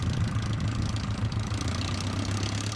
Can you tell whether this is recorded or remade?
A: recorded